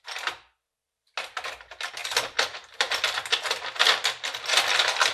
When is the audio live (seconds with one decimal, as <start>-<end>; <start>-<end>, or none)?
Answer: 0.0-5.1